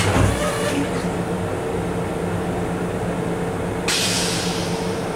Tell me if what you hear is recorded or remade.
recorded